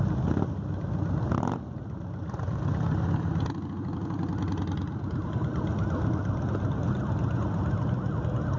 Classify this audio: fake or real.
real